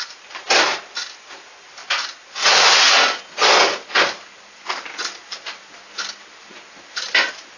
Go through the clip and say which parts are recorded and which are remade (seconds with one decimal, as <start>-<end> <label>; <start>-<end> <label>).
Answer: 0.0-1.8 remade; 1.8-6.2 recorded; 6.2-7.6 remade